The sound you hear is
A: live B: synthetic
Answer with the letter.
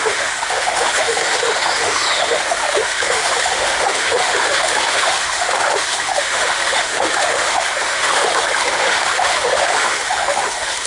B